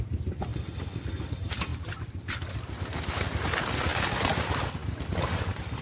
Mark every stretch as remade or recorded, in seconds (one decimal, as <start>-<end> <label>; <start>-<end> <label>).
0.0-5.8 recorded